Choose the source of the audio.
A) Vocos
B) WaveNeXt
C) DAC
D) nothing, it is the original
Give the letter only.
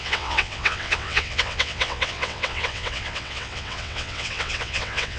B